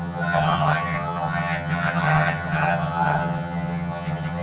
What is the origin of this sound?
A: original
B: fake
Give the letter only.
B